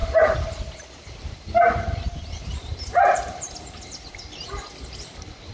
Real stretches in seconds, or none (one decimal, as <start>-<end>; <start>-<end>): 0.0-2.4; 3.4-5.5